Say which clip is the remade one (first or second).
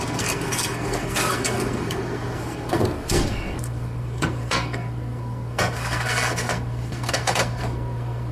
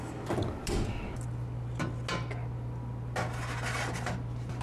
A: first